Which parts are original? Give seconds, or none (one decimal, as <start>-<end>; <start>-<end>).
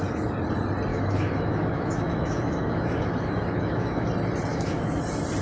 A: 0.0-0.9; 4.1-4.5; 5.0-5.4